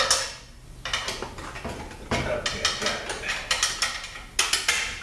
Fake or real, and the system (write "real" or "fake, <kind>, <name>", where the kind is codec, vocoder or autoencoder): real